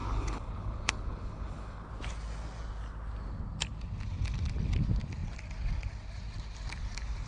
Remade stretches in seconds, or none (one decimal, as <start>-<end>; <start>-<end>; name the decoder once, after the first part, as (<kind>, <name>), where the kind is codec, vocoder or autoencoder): 0.0-1.9 (codec, HILCodec)